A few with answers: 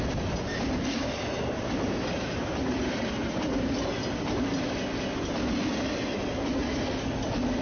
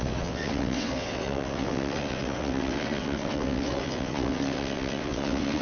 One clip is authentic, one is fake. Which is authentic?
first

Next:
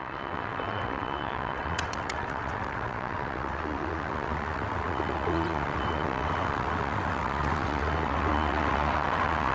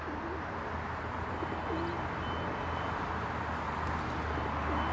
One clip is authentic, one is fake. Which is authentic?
second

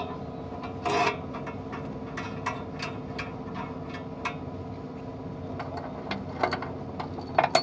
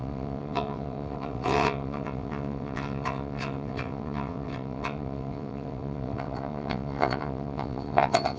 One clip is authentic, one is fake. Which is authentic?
first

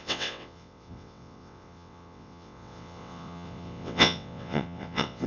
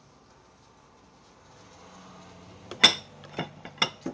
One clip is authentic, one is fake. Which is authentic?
second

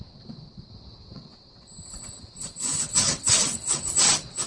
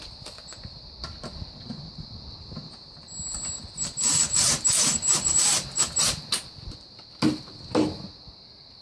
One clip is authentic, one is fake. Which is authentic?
second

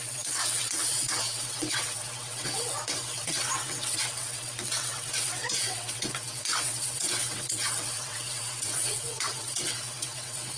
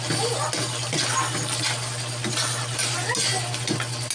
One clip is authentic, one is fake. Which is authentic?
second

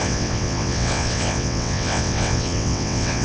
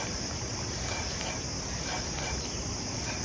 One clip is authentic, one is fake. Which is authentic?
second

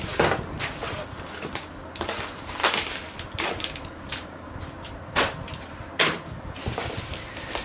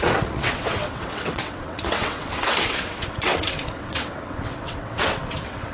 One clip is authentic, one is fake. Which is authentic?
first